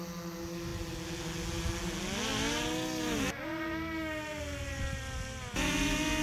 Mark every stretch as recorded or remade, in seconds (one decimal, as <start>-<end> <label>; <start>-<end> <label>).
0.0-6.2 recorded